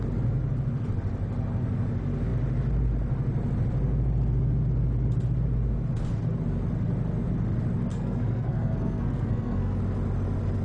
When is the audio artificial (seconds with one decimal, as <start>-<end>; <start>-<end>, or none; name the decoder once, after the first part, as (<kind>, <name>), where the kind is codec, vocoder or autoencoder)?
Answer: 7.9-9.8 (codec, SNAC)